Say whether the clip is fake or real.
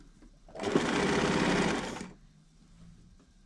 real